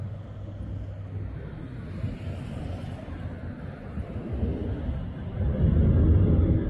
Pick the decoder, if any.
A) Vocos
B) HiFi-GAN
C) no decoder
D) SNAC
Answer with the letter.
C